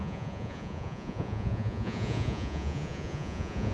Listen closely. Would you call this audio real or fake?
fake